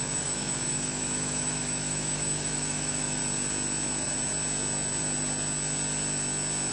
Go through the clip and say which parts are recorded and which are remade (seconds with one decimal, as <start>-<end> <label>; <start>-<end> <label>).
0.0-3.2 remade; 3.2-6.7 recorded